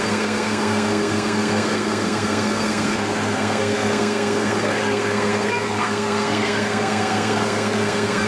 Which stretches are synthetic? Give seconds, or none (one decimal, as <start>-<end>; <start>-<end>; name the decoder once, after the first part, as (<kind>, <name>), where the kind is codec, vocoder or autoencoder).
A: 0.0-8.3 (codec, SNAC)